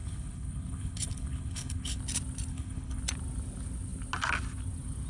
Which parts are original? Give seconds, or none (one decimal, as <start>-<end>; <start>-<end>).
2.0-2.5; 3.0-5.1